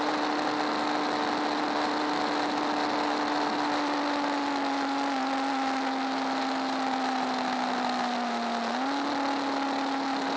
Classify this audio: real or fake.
real